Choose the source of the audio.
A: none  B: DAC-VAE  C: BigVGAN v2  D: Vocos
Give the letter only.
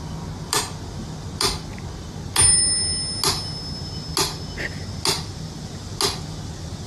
A